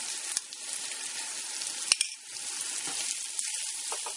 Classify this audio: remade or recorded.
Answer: recorded